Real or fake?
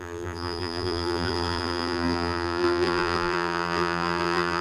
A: fake